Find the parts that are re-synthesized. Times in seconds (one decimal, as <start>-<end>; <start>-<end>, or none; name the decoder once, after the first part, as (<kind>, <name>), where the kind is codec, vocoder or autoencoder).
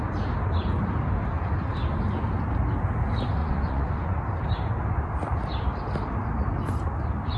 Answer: 3.4-4.2 (vocoder, Vocos)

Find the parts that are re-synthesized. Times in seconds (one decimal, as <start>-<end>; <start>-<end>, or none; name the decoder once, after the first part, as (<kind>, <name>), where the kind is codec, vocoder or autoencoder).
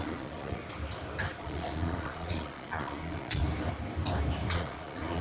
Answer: 0.0-0.6 (vocoder, Vocos); 1.4-3.4; 4.5-5.2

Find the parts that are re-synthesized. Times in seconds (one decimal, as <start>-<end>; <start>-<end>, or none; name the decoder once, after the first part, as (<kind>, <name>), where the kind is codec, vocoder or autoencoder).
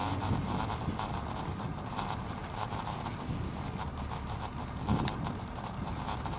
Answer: none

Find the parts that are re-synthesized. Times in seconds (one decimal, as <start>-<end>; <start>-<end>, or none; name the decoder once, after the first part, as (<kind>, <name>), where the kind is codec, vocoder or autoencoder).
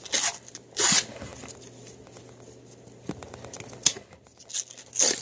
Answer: none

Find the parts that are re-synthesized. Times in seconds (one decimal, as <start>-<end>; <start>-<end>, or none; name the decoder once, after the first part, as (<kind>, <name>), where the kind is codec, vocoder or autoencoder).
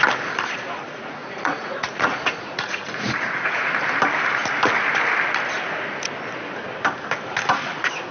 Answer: 1.2-3.7 (vocoder, Vocos)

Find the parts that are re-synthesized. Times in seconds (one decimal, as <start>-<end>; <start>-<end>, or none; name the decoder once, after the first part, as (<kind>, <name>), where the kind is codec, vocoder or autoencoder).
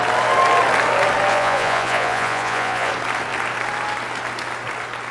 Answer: 1.3-2.9 (vocoder, Vocos)